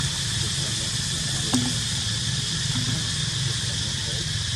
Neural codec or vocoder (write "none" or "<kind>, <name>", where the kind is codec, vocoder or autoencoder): none